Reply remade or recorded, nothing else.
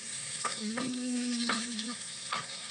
remade